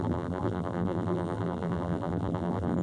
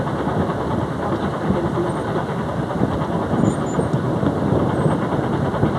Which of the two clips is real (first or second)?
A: second